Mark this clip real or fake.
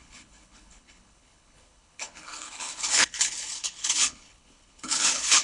fake